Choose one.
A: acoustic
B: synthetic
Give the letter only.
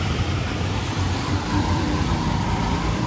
B